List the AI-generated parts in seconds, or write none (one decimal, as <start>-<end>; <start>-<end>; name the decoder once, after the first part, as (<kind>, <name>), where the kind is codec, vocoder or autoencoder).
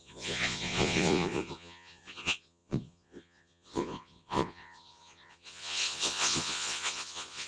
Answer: 0.0-7.5 (vocoder, Vocos)